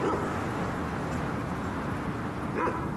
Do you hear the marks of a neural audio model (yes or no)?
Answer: no